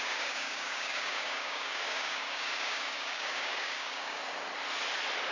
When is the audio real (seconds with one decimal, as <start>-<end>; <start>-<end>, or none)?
4.2-5.3